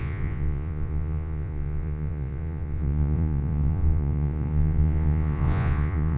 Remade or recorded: remade